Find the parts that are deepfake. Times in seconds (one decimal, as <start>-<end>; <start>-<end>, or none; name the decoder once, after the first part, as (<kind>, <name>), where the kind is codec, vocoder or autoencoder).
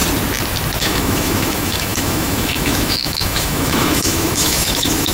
0.8-5.1 (autoencoder, DAC-VAE)